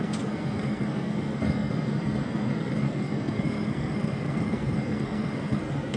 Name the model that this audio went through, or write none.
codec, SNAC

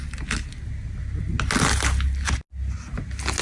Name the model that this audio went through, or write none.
none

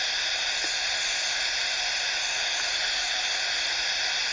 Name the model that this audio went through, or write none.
none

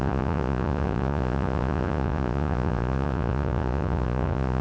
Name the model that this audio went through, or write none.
vocoder, Vocos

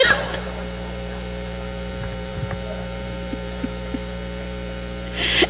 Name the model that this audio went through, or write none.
vocoder, BigVGAN v2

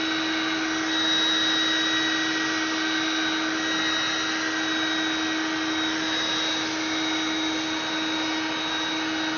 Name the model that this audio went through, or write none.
none